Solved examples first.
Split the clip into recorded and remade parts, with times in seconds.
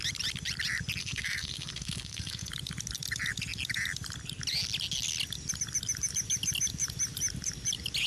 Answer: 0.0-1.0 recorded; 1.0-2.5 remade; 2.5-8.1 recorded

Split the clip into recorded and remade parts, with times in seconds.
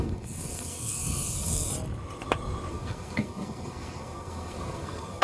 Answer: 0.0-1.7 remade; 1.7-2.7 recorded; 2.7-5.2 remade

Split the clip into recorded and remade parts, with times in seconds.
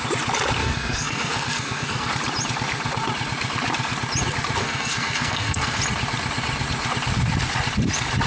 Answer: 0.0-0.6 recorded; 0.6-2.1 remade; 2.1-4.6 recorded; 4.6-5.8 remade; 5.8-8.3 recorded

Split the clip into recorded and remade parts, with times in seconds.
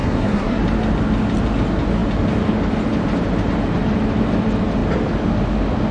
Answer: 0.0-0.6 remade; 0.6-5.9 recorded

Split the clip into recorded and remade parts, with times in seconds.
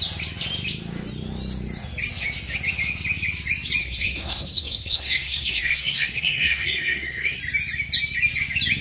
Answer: 0.0-3.8 recorded; 3.8-7.4 remade; 7.4-8.8 recorded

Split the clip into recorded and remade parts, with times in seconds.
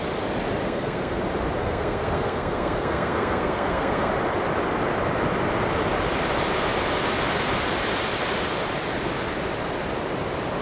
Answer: 0.0-0.6 recorded; 0.6-1.2 remade; 1.2-1.6 recorded; 1.6-4.1 remade; 4.1-10.6 recorded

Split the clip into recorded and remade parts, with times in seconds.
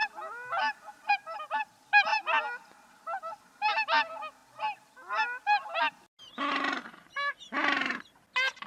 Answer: 0.0-8.7 recorded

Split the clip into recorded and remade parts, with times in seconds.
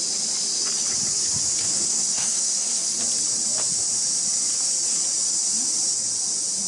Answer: 0.0-1.6 recorded; 1.6-3.0 remade; 3.0-6.7 recorded